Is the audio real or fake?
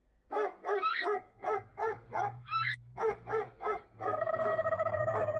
fake